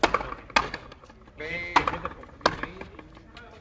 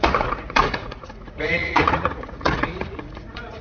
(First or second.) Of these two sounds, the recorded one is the first